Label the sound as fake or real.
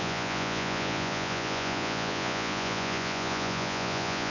fake